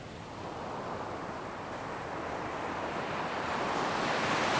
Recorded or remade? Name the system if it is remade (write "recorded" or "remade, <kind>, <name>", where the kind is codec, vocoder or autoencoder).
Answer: remade, vocoder, BigVGAN v2